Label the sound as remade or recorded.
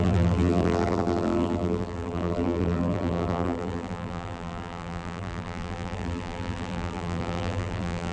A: remade